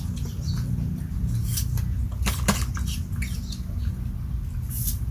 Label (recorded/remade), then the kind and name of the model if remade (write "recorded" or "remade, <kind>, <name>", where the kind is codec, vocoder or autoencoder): recorded